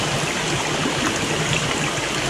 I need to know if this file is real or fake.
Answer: fake